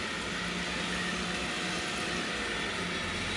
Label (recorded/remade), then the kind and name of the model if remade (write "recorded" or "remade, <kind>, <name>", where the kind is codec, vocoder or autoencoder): recorded